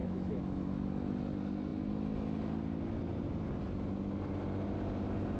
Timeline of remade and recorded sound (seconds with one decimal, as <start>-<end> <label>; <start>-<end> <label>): 0.0-1.1 remade; 1.1-5.4 recorded